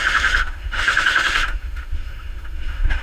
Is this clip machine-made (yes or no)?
yes